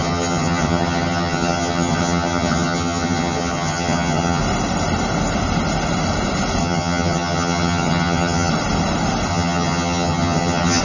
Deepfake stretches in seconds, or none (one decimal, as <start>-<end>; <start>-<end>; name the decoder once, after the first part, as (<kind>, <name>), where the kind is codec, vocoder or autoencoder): 0.0-4.4 (vocoder, HiFi-GAN); 6.6-8.5; 9.3-10.8